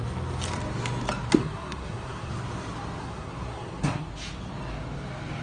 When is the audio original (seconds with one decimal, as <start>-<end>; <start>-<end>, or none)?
0.0-1.4; 2.3-3.0; 4.1-5.4